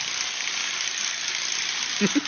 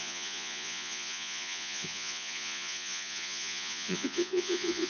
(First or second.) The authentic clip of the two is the first